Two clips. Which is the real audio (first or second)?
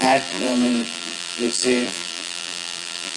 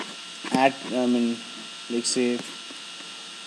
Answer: second